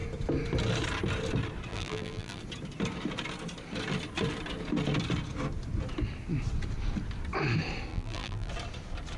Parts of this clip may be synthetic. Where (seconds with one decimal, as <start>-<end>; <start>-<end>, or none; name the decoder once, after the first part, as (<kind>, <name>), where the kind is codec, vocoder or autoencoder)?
1.7-2.4 (vocoder, BigVGAN v2); 7.9-8.5